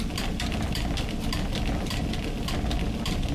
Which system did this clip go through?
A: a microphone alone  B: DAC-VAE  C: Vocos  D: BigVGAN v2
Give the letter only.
A